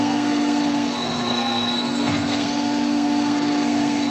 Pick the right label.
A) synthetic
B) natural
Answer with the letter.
A